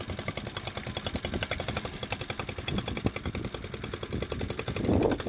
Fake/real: real